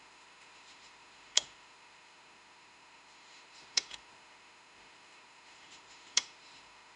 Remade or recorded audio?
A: remade